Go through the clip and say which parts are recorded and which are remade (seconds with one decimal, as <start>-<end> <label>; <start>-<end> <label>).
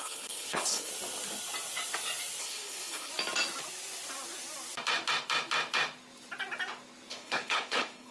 0.0-0.9 remade; 0.9-2.4 recorded; 2.4-3.1 remade; 3.1-7.1 recorded; 7.1-8.1 remade